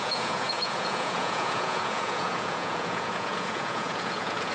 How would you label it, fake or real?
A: fake